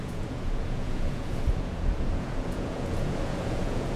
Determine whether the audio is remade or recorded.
remade